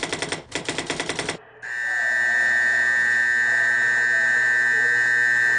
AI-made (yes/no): no